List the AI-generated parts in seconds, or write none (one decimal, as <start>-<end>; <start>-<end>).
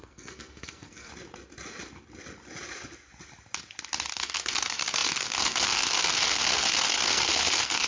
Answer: 0.0-1.1; 4.1-7.9